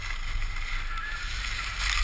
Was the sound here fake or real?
real